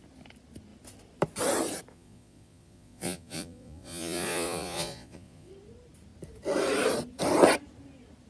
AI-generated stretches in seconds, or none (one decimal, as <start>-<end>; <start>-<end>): 1.9-5.5